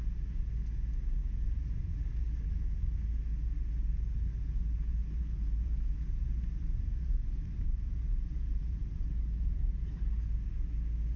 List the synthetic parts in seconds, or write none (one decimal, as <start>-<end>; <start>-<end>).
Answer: 1.2-2.5; 4.9-10.0